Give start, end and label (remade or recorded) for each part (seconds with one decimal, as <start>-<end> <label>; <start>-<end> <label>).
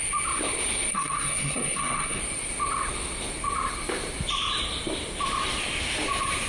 0.0-0.9 recorded; 0.9-2.2 remade; 2.2-6.5 recorded